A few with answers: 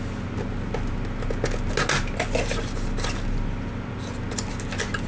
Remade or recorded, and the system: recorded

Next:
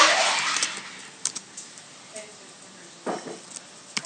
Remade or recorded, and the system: recorded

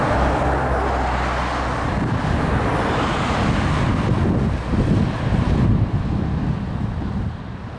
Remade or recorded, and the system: recorded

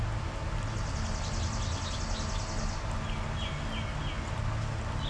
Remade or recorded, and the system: recorded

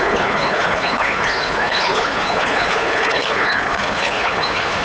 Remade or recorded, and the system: remade, codec, HILCodec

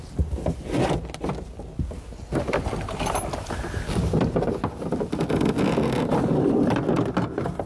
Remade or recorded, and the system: recorded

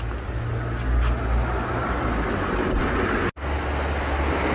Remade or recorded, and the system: recorded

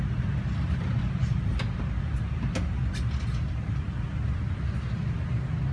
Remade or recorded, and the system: recorded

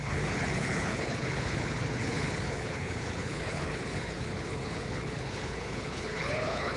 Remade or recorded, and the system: remade, codec, HILCodec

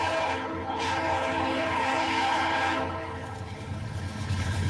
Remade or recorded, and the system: remade, codec, HILCodec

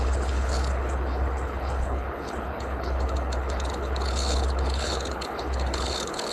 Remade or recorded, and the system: remade, codec, HILCodec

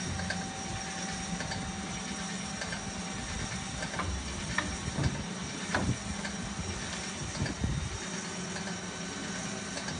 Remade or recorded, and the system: recorded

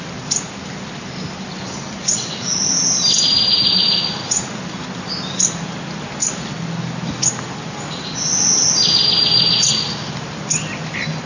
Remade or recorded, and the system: recorded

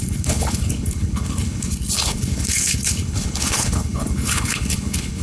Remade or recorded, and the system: remade, codec, HILCodec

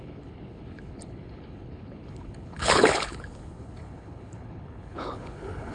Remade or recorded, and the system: remade, codec, HILCodec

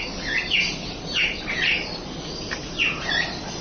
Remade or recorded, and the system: recorded